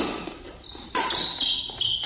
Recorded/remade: recorded